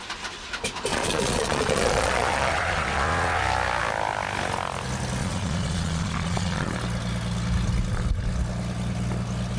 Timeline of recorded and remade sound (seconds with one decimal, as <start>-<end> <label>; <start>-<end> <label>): 0.0-0.9 recorded; 0.9-3.4 remade; 3.4-5.2 recorded; 5.2-6.7 remade; 6.7-9.6 recorded

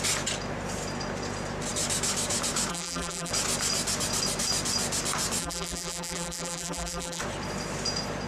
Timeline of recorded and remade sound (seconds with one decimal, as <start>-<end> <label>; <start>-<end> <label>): 0.0-2.7 recorded; 2.7-3.3 remade; 3.3-5.4 recorded; 5.4-7.2 remade; 7.2-8.3 recorded